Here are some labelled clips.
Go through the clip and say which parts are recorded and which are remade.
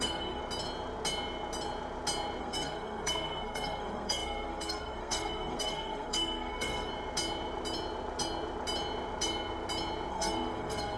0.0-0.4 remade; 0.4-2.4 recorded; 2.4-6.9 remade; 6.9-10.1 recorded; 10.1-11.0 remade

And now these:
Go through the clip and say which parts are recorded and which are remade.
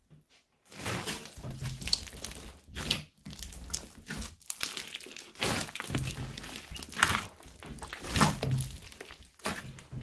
0.0-10.0 recorded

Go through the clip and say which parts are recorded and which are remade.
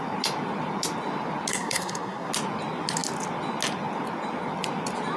0.0-1.5 recorded; 1.5-2.3 remade; 2.3-5.2 recorded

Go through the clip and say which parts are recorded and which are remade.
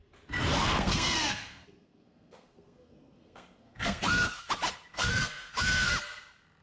0.0-0.5 recorded; 0.5-4.5 remade; 4.5-4.9 recorded; 4.9-5.9 remade; 5.9-6.6 recorded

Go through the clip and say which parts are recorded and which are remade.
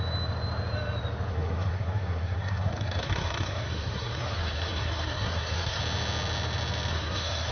0.0-1.3 recorded; 1.3-5.8 remade; 5.8-6.9 recorded; 6.9-7.5 remade